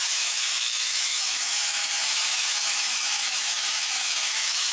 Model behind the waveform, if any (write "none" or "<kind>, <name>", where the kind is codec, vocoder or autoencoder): autoencoder, DAC-VAE